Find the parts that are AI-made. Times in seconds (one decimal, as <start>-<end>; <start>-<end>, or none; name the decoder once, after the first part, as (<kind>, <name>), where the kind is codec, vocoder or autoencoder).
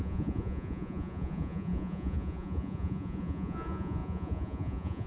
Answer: 0.0-5.1 (vocoder, Vocos)